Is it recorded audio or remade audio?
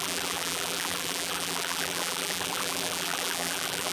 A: remade